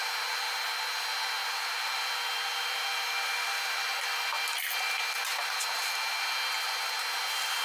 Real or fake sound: real